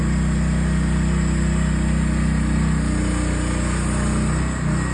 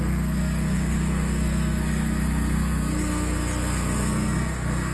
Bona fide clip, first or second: first